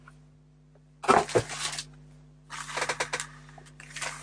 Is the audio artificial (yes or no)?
no